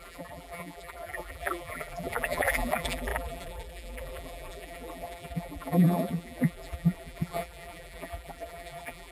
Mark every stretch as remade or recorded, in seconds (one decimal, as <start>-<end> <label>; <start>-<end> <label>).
0.0-9.1 remade